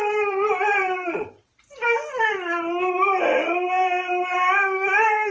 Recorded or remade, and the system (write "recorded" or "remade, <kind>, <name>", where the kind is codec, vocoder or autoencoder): remade, vocoder, BigVGAN v2